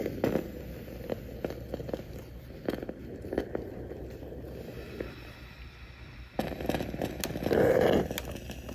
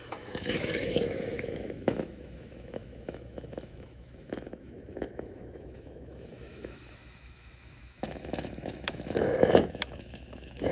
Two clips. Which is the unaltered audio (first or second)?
first